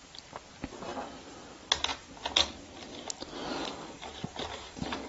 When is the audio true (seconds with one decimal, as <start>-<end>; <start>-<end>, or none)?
0.0-3.5; 4.1-4.5